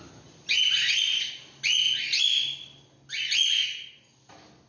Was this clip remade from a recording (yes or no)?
no